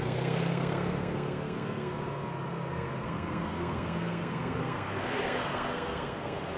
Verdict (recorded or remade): remade